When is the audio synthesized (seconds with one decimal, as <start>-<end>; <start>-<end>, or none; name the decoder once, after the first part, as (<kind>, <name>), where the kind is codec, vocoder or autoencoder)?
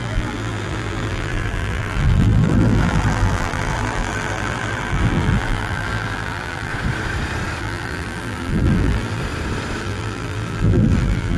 0.0-6.7 (vocoder, BigVGAN v2); 7.6-9.2; 9.8-11.4